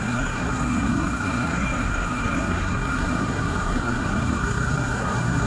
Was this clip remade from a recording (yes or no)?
yes